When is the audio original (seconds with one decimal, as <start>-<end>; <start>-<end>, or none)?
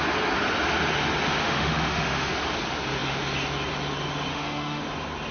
0.0-1.4; 2.3-4.3; 4.8-5.3